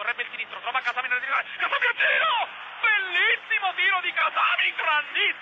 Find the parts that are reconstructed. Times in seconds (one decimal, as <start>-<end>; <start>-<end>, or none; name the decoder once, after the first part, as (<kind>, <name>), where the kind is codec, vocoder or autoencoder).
1.3-2.1 (codec, HILCodec); 4.2-4.8